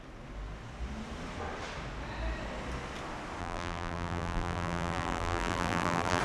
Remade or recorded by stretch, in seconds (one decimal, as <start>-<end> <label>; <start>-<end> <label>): 0.0-3.4 recorded; 3.4-6.2 remade

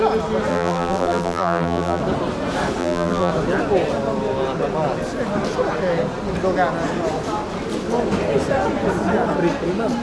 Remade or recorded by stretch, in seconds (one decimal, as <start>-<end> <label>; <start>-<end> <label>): 0.0-0.5 recorded; 0.5-2.0 remade; 2.0-2.8 recorded; 2.8-3.3 remade; 3.3-10.0 recorded

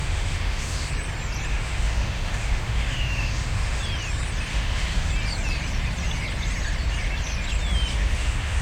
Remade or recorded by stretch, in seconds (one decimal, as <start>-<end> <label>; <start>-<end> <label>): 0.0-0.9 remade; 0.9-1.5 recorded; 1.5-3.8 remade; 3.8-4.5 recorded; 4.5-5.1 remade; 5.1-7.9 recorded; 7.9-8.6 remade